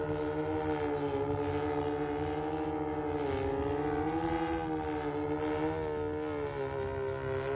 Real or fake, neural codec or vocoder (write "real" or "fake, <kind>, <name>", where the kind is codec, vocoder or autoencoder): real